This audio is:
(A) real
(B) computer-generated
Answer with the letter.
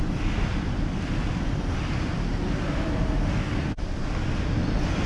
A